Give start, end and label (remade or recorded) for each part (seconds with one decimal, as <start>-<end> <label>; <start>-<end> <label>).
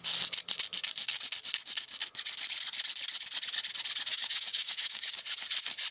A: 0.0-4.1 recorded; 4.1-5.1 remade; 5.1-5.9 recorded